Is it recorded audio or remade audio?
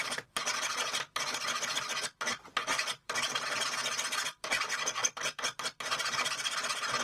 remade